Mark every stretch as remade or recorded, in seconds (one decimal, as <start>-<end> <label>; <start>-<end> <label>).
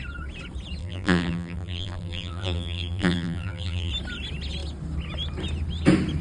0.0-0.8 recorded; 0.8-3.9 remade; 3.9-6.2 recorded